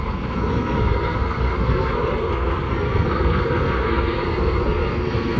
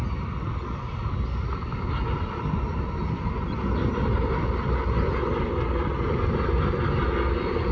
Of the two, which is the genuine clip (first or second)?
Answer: second